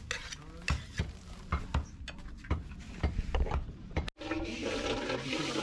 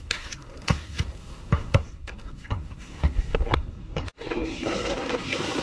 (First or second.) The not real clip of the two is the second